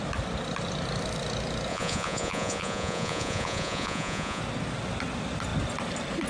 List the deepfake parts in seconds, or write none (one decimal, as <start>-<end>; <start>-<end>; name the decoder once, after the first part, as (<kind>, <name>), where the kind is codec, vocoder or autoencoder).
1.7-4.4 (vocoder, Vocos)